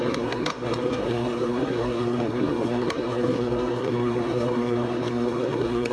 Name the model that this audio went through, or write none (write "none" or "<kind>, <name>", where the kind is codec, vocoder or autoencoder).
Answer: codec, SNAC